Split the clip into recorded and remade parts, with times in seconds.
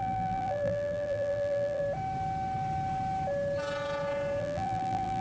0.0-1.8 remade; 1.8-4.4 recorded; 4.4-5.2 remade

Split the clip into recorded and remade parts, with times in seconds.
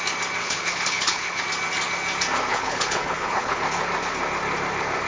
0.0-0.4 recorded; 0.4-1.4 remade; 1.4-2.5 recorded; 2.5-3.6 remade; 3.6-5.1 recorded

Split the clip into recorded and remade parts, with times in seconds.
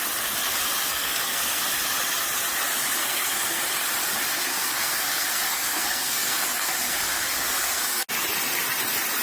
0.0-0.9 recorded; 0.9-1.6 remade; 1.6-3.0 recorded; 3.0-3.6 remade; 3.6-4.5 recorded; 4.5-8.1 remade; 8.1-9.2 recorded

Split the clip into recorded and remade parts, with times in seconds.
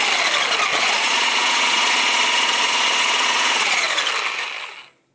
0.0-0.7 recorded; 0.7-3.8 remade; 3.8-5.1 recorded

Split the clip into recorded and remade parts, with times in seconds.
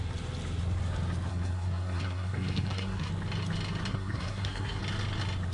0.0-1.3 recorded; 1.3-3.1 remade; 3.1-3.9 recorded; 3.9-4.8 remade; 4.8-5.5 recorded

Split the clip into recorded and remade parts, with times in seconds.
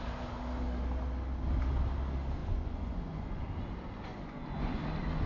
0.0-2.4 recorded; 2.4-3.4 remade; 3.4-4.1 recorded; 4.1-4.8 remade; 4.8-5.3 recorded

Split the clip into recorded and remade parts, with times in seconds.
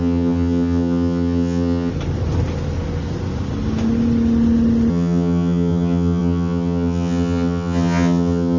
0.0-1.9 remade; 1.9-4.9 recorded; 4.9-8.6 remade